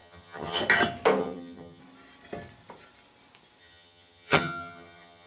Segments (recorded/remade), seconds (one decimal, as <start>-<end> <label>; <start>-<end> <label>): 0.0-0.6 remade; 0.6-1.2 recorded; 1.2-1.8 remade; 1.8-3.6 recorded; 3.6-5.3 remade